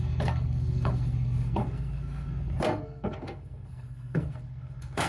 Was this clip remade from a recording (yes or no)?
yes